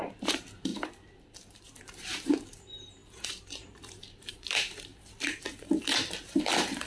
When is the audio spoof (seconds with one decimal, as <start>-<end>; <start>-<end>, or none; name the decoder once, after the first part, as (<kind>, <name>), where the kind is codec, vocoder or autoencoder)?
0.0-4.9 (vocoder, BigVGAN v2); 5.8-6.9